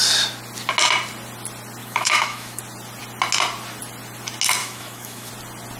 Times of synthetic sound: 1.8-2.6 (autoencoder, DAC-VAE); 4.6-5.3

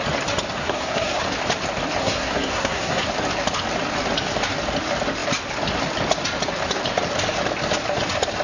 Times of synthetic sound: 0.6-1.2 (codec, SNAC); 2.0-3.1

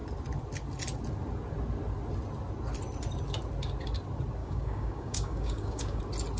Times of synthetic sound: 4.4-6.0 (codec, DAC)

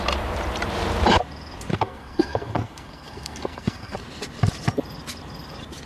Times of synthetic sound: 1.7-4.0 (codec, SNAC)

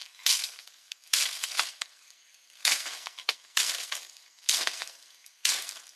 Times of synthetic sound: 0.0-6.0 (codec, SNAC)

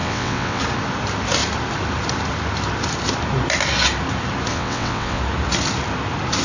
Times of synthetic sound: 0.0-0.6 (vocoder, WaveNeXt); 4.5-5.2

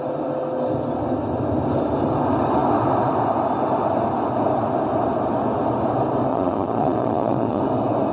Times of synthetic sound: 6.3-7.6 (vocoder, Vocos)